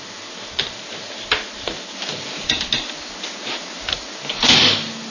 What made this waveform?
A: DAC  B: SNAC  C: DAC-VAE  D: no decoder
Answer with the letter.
D